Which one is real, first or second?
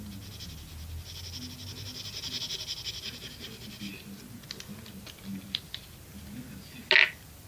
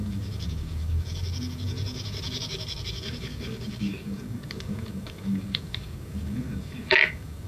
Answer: first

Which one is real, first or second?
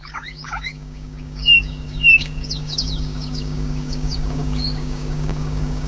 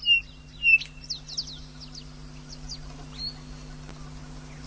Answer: second